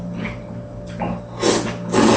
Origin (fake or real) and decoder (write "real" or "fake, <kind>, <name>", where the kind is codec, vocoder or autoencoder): real